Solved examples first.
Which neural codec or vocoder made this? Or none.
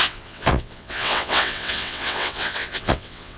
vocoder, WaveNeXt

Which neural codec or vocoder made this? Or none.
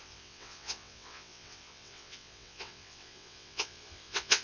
vocoder, WaveNeXt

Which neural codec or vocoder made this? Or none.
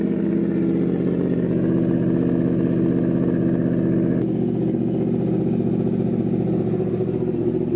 none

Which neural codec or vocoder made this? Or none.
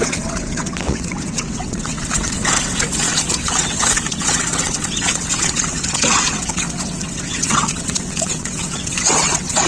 vocoder, WaveNeXt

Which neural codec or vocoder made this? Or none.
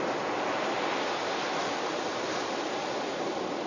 none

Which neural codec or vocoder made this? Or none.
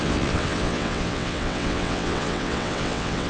vocoder, WaveNeXt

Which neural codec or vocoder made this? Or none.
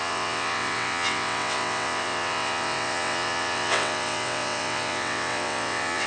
vocoder, WaveNeXt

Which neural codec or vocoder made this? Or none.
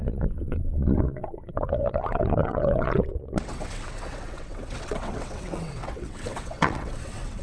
vocoder, WaveNeXt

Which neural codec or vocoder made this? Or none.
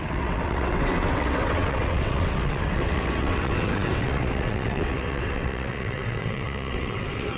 vocoder, WaveNeXt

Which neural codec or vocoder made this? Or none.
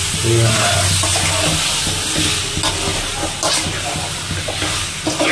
none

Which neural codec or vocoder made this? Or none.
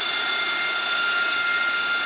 none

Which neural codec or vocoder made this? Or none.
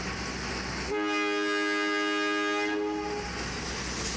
none